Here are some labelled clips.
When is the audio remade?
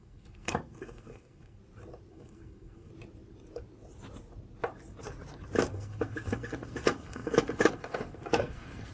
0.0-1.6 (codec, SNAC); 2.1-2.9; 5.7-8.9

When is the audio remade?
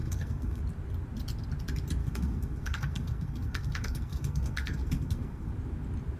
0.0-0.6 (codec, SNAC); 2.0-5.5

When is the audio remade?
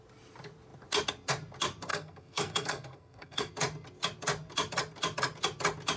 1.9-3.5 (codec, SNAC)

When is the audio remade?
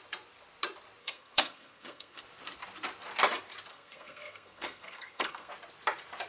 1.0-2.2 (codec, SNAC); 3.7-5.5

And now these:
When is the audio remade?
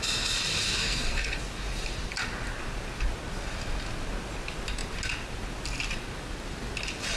0.8-1.4 (codec, SNAC)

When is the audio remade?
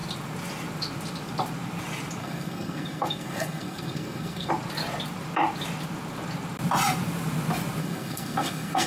2.2-4.5 (codec, SNAC); 7.8-8.9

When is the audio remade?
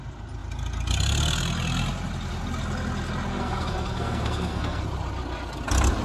3.3-4.8 (codec, SNAC)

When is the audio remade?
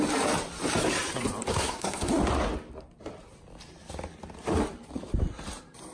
1.5-2.1 (codec, SNAC)